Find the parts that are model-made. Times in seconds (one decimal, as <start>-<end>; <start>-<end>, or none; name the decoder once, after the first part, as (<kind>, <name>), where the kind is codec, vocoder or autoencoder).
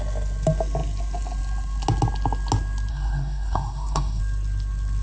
2.9-4.2 (codec, SNAC)